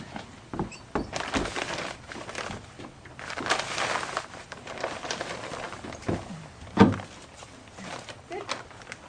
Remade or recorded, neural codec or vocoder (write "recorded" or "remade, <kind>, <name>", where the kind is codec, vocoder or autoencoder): recorded